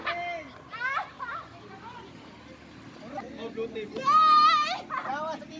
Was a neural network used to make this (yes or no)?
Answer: no